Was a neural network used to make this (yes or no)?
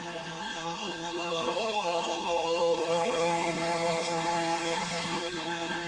yes